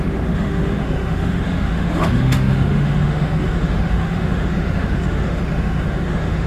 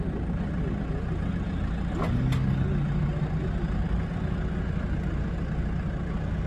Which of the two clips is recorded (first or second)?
second